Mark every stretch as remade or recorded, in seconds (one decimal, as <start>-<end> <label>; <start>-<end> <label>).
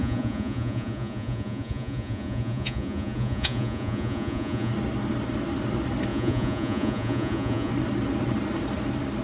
0.0-4.7 remade; 4.7-6.1 recorded; 6.1-7.7 remade; 7.7-9.2 recorded